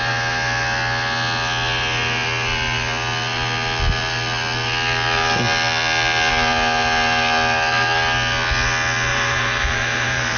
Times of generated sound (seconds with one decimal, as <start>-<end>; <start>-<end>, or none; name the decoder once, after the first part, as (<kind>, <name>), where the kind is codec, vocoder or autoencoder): 9.1-10.4 (vocoder, BigVGAN v2)